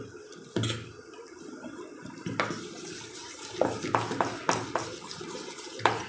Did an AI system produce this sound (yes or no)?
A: no